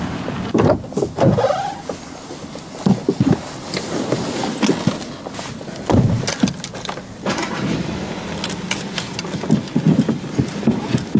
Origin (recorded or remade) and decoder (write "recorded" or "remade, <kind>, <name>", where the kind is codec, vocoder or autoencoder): recorded